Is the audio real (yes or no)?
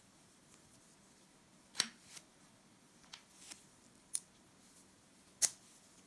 yes